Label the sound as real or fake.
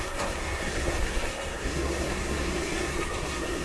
fake